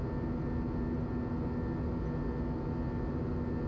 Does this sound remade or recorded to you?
recorded